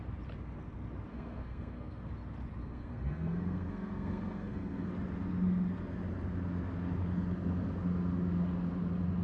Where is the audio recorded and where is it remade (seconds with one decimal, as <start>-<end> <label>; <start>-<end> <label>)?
0.0-1.1 recorded; 1.1-2.1 remade; 2.1-2.6 recorded; 2.6-4.9 remade; 4.9-9.2 recorded